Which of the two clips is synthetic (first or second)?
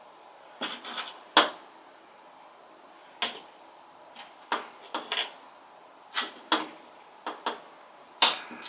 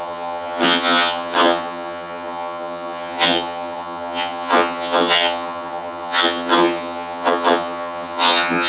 second